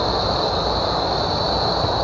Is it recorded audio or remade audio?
recorded